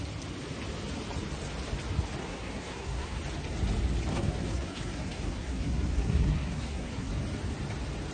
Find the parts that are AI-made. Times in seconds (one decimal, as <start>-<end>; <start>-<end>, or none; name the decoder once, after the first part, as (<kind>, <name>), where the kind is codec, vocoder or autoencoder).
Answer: 2.2-3.2 (codec, SNAC); 4.1-7.1

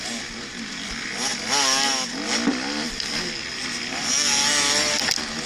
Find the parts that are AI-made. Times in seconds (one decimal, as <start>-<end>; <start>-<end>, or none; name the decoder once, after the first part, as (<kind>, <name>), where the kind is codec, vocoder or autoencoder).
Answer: none

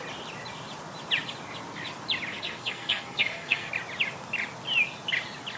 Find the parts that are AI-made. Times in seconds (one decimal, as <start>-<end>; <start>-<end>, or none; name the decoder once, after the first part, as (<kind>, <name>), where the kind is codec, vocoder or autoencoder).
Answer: 2.3-3.7 (codec, SNAC)

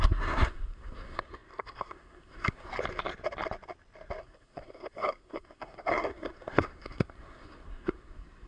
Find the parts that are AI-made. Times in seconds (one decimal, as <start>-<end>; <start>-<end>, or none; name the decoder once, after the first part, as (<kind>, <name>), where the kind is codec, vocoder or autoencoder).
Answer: 0.0-2.7 (codec, SNAC); 4.2-8.5